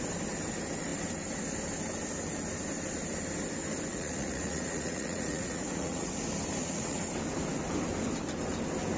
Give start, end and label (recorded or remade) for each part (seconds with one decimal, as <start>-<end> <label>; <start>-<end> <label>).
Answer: 0.0-3.9 recorded; 3.9-6.1 remade; 6.1-6.6 recorded; 6.6-7.1 remade; 7.1-9.0 recorded